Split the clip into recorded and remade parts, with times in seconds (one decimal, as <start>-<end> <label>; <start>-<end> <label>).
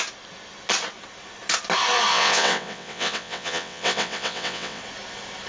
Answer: 0.0-2.1 recorded; 2.1-4.8 remade; 4.8-5.5 recorded